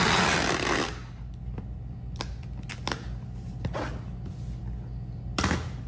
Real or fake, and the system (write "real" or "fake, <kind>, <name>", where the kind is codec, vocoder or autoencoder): real